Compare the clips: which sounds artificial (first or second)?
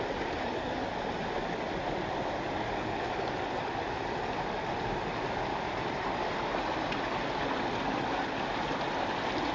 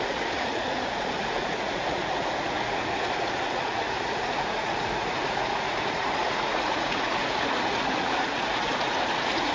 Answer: second